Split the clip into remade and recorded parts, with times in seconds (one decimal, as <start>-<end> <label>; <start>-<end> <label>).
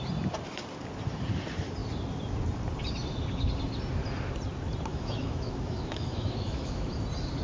0.0-4.9 recorded; 4.9-6.9 remade; 6.9-7.4 recorded